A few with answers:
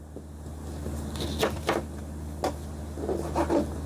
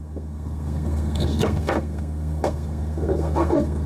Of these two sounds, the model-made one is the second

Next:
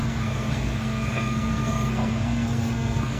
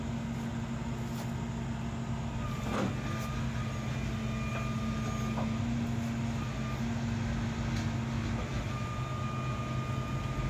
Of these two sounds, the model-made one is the first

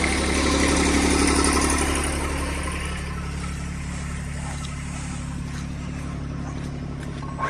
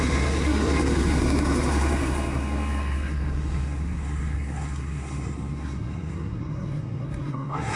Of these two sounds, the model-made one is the second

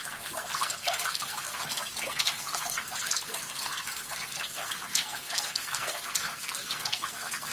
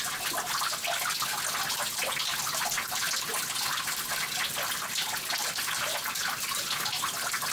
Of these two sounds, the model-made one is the first